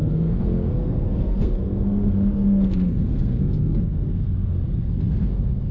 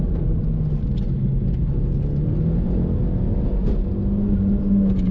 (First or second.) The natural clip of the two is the second